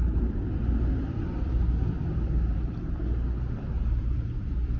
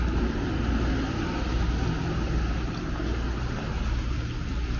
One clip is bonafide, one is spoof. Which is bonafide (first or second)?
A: second